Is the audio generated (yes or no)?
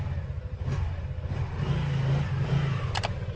no